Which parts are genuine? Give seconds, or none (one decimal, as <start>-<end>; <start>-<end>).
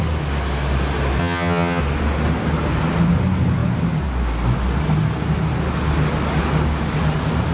0.0-1.2; 1.8-7.5